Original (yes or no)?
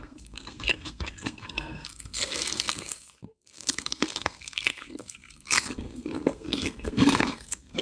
no